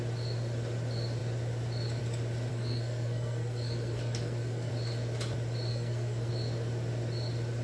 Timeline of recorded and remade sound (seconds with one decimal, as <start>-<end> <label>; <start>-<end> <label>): 0.0-2.5 recorded; 2.5-4.7 remade; 4.7-5.7 recorded; 5.7-6.3 remade; 6.3-7.6 recorded